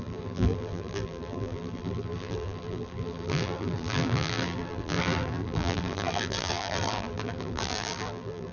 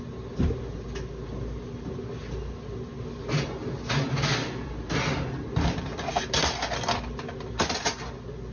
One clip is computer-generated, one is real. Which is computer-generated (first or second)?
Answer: first